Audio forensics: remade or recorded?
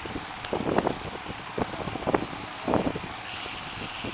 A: recorded